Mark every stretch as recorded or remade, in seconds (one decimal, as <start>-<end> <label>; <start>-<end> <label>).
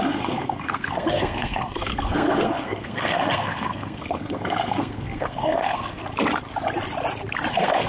0.0-6.0 remade; 6.0-7.5 recorded; 7.5-7.9 remade